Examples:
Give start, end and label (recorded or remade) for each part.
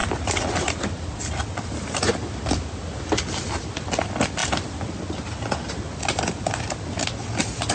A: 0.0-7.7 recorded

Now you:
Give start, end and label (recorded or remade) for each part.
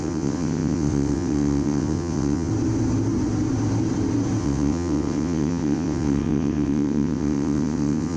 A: 0.0-2.5 remade; 2.5-4.4 recorded; 4.4-8.2 remade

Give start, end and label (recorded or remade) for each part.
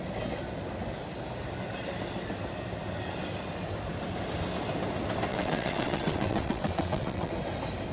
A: 0.0-5.3 recorded; 5.3-7.3 remade; 7.3-7.9 recorded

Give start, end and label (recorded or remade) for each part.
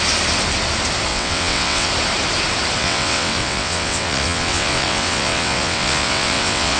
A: 0.0-1.1 recorded; 1.1-1.9 remade; 1.9-2.8 recorded; 2.8-6.8 remade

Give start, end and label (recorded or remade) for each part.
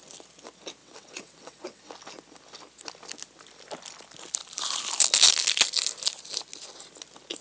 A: 0.0-0.8 recorded; 0.8-1.9 remade; 1.9-7.4 recorded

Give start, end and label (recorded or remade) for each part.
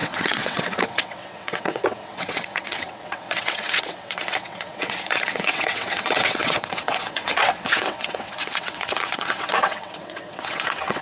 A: 0.0-11.0 remade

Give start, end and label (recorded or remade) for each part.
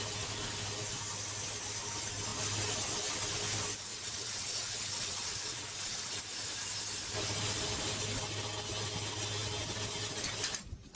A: 0.0-3.9 recorded; 3.9-6.2 remade; 6.2-11.0 recorded